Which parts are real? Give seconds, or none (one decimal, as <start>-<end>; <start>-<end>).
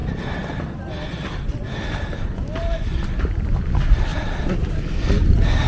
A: 0.0-3.4; 4.1-4.7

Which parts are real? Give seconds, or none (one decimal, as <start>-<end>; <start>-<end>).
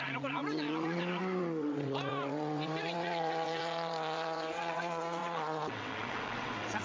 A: none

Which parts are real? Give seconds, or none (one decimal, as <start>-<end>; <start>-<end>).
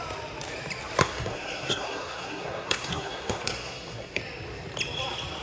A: 0.0-1.0; 4.2-5.4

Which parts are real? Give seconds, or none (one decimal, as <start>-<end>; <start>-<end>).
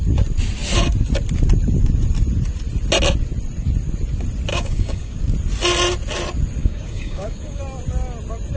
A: 0.0-4.5; 5.2-6.6; 7.6-8.6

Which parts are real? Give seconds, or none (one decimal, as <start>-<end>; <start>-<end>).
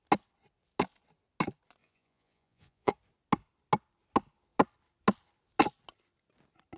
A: 0.0-1.8; 2.9-6.8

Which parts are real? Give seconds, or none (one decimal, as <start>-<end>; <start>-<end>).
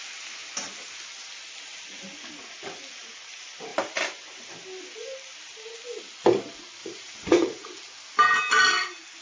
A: 0.0-6.8; 7.7-9.2